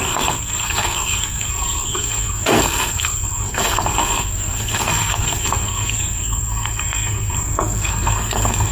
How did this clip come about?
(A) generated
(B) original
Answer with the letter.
A